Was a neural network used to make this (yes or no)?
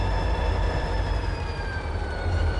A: yes